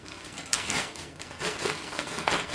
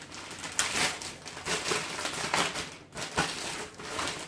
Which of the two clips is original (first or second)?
second